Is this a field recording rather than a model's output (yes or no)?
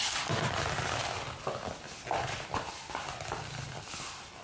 yes